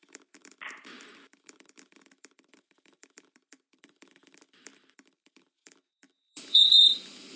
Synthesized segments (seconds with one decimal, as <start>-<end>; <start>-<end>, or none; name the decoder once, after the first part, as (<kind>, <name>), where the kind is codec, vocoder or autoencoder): 0.0-7.4 (vocoder, BigVGAN v2)